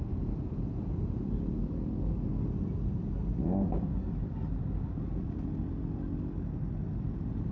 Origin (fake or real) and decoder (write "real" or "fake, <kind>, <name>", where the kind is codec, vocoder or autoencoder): real